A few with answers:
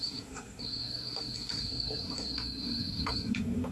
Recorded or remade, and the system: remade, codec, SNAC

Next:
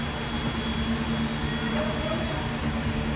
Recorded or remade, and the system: recorded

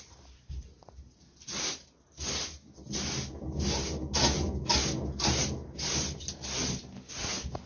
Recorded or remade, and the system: recorded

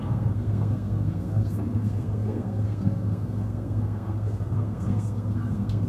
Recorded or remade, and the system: remade, codec, SNAC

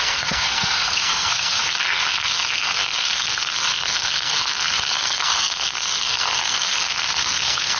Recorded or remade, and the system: remade, codec, SNAC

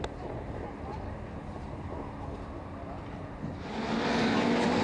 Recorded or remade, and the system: recorded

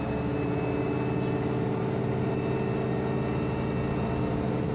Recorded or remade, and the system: recorded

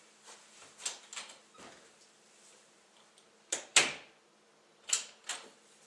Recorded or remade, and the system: recorded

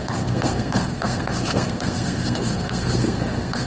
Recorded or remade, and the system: remade, codec, SNAC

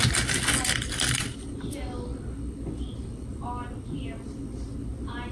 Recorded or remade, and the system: recorded